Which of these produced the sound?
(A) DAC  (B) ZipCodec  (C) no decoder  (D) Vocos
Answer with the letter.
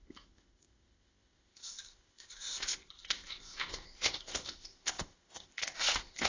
B